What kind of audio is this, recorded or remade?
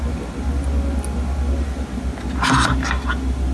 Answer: recorded